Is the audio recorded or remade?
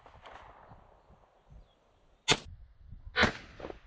recorded